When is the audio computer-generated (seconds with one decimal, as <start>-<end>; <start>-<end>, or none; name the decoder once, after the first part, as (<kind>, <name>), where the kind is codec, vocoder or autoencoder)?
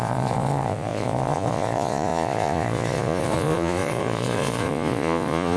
0.0-5.6 (vocoder, Vocos)